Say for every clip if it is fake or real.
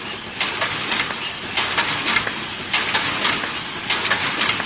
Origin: real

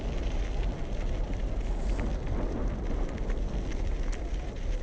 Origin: real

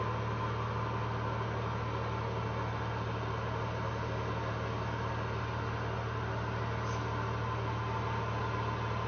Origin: real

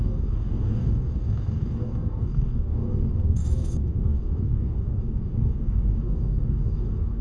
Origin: fake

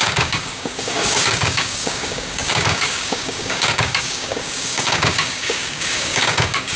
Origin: fake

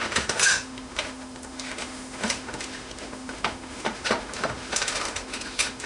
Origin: fake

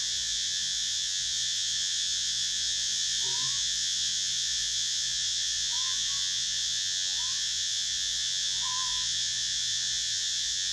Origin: fake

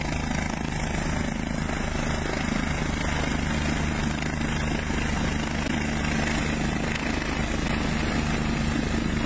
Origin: real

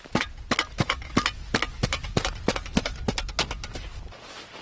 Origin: real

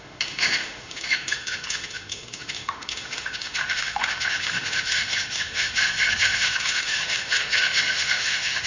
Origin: fake